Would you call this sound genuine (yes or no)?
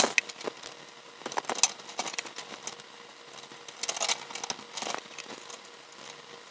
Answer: yes